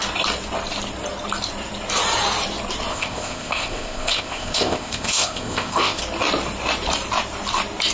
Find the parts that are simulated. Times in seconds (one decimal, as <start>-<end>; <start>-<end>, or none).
2.9-6.0